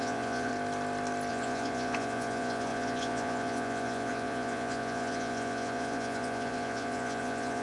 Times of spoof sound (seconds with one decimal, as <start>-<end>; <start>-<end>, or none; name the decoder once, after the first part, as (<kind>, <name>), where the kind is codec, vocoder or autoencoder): 0.0-0.5 (vocoder, Vocos); 1.3-7.6